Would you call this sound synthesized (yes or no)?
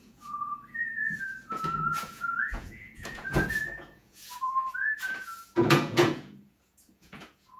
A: yes